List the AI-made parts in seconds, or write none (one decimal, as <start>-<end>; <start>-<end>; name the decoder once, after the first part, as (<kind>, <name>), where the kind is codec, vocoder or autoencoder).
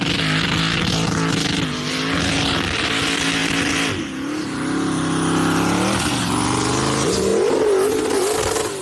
none